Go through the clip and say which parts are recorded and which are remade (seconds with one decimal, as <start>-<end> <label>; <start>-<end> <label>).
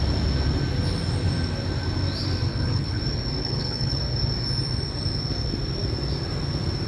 0.0-2.5 recorded; 2.5-3.0 remade; 3.0-3.4 recorded; 3.4-4.0 remade; 4.0-6.9 recorded